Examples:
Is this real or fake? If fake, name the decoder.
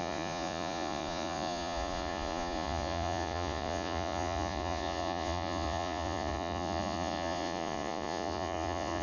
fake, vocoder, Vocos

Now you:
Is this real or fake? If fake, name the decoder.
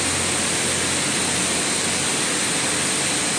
real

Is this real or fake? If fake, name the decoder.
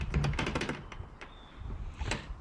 real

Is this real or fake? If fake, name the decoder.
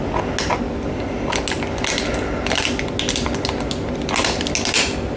real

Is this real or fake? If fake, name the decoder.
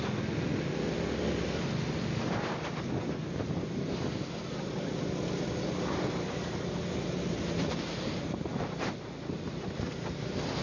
real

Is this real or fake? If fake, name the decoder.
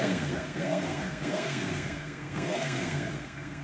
fake, codec, SNAC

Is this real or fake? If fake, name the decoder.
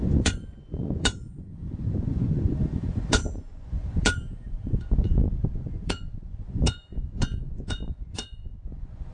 fake, vocoder, Vocos